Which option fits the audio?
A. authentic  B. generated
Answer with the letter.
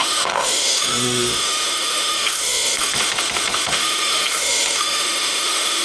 B